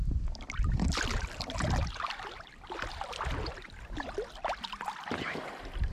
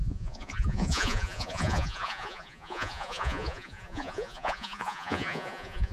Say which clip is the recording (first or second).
first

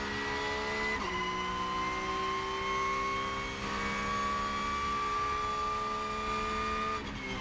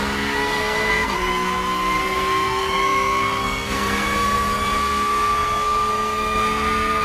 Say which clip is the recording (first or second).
first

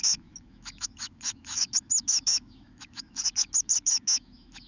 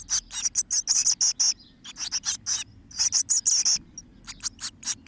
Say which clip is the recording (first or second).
second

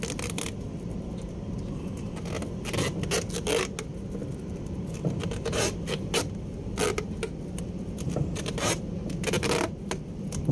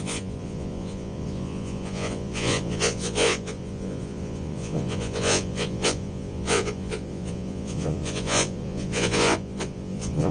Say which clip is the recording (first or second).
first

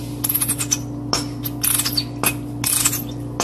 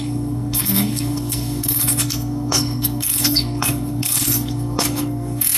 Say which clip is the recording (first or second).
first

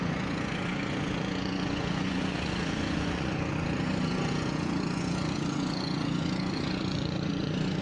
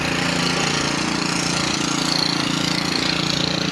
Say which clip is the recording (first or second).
second